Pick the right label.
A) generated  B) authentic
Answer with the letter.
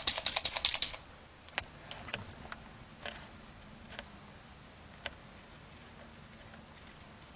B